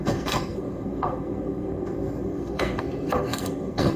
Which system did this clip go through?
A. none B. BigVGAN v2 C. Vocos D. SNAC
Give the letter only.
D